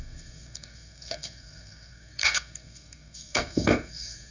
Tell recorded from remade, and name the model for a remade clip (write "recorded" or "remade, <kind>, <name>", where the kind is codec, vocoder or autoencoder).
remade, codec, SNAC